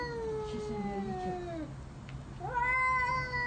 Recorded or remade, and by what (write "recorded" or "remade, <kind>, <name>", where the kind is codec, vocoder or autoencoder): recorded